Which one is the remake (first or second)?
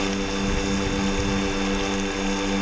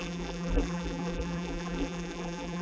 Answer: second